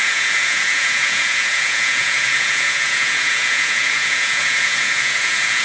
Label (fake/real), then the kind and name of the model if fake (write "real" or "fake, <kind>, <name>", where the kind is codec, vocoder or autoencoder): fake, vocoder, Vocos